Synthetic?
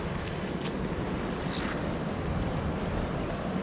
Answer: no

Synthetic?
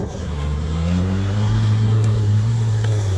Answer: yes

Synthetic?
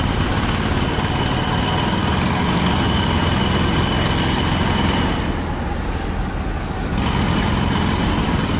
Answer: no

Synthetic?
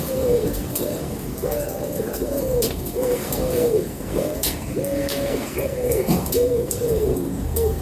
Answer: yes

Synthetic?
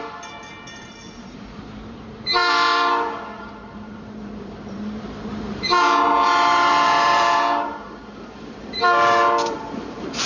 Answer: yes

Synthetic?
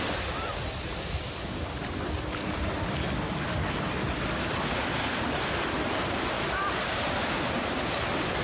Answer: no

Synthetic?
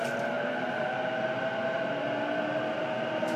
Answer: no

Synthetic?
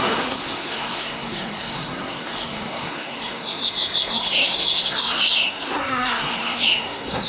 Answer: yes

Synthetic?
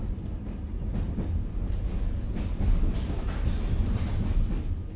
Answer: no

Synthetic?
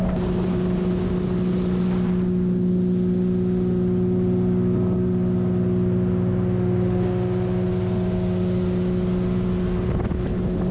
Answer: no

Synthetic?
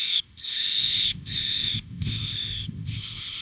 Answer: yes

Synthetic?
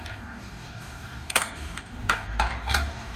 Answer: yes